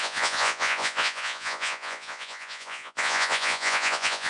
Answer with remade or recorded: remade